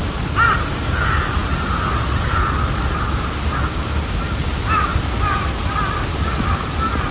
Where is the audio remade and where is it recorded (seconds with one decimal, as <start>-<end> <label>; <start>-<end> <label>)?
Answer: 0.0-7.1 recorded